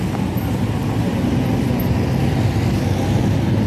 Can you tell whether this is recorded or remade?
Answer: recorded